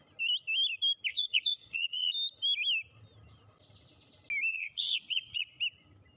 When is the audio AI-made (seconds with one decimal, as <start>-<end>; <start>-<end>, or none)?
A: 1.1-2.1; 4.5-5.6